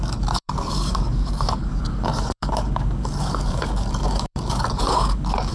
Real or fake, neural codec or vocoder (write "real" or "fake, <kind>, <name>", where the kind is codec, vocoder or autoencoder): fake, codec, DAC